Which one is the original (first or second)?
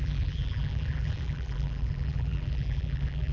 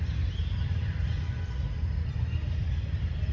second